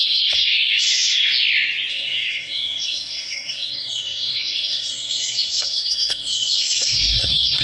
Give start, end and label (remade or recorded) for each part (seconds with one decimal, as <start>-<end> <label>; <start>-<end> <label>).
0.0-1.2 remade; 1.2-1.9 recorded; 1.9-7.6 remade